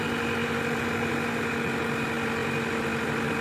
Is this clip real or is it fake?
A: real